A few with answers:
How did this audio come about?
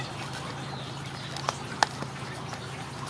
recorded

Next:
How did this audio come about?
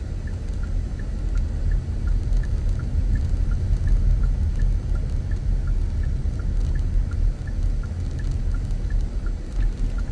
recorded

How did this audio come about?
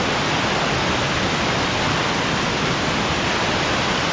recorded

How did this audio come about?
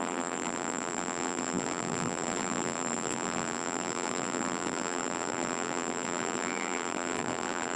remade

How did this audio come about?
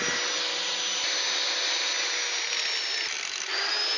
recorded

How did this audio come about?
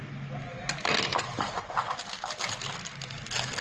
recorded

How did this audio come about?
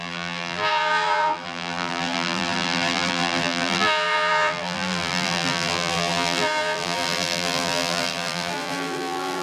remade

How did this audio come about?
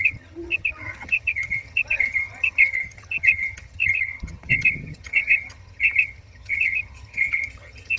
remade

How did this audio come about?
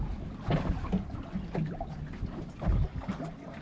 recorded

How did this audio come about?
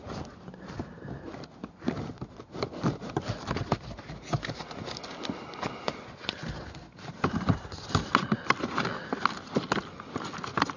recorded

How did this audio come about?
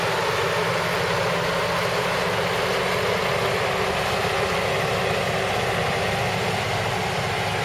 recorded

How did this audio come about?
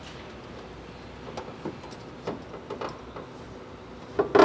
recorded